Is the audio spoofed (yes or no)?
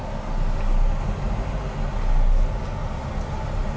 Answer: no